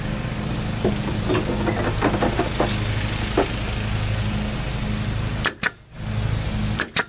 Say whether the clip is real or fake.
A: real